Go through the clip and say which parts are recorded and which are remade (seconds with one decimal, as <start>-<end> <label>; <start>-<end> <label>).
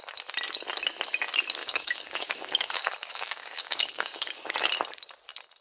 0.0-1.6 recorded; 1.6-4.5 remade; 4.5-5.6 recorded